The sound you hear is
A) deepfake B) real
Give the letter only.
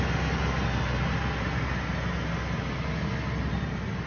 B